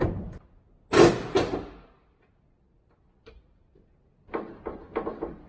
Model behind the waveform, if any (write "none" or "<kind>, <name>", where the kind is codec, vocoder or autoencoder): none